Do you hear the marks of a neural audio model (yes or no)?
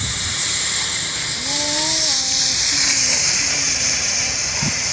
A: yes